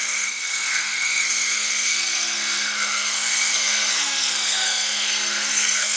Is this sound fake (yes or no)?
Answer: yes